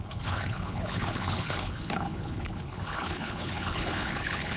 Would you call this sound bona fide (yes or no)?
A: no